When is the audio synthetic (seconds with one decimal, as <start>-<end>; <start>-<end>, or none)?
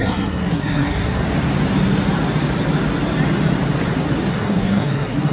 0.0-1.2; 4.3-5.3